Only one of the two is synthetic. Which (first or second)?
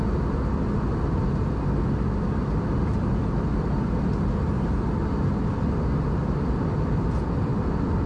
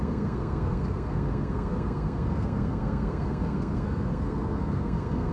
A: second